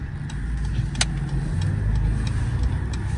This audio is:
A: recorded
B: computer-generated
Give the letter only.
A